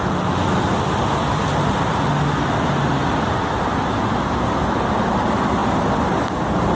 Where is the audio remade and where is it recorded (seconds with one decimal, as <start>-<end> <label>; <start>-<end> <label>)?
0.0-6.7 recorded